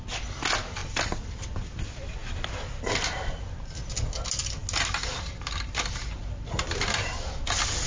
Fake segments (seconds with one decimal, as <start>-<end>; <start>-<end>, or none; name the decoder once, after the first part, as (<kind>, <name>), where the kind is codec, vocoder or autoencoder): none